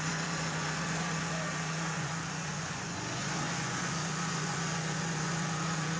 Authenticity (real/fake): fake